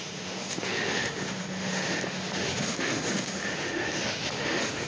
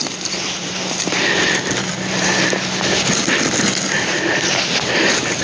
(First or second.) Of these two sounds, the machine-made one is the first